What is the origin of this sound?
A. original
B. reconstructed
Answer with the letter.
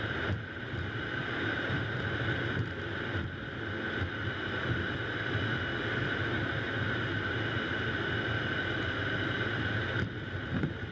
A